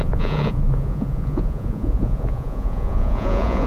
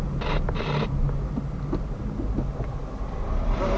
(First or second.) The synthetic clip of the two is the first